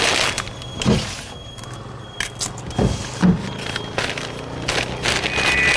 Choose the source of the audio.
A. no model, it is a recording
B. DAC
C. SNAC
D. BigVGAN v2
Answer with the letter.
A